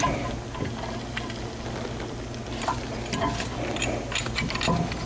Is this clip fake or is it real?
real